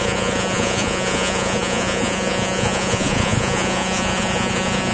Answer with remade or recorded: remade